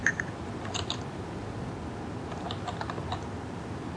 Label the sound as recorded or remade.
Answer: recorded